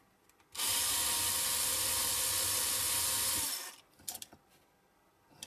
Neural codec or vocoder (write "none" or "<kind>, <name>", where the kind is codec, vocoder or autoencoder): none